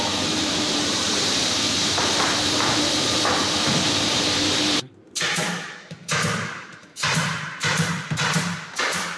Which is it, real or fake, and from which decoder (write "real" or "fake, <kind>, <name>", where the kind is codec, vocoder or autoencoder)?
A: fake, vocoder, BigVGAN v2